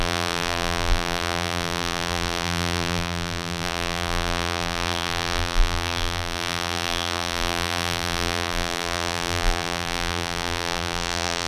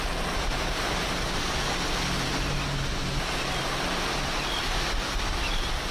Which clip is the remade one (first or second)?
first